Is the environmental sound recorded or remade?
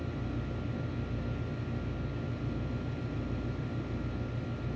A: recorded